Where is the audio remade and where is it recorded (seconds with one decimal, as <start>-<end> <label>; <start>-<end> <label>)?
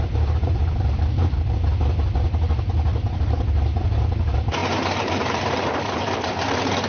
0.0-1.7 remade; 1.7-3.1 recorded; 3.1-6.9 remade